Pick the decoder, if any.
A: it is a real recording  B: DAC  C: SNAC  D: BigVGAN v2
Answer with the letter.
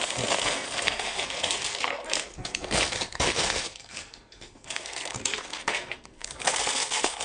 C